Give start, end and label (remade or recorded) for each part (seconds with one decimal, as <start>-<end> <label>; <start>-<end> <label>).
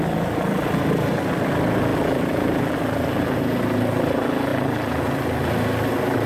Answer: 0.0-1.9 recorded; 1.9-2.6 remade; 2.6-6.3 recorded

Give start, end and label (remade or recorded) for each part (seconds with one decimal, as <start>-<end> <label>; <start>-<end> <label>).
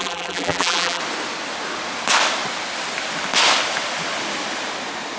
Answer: 0.0-1.0 remade; 1.0-5.2 recorded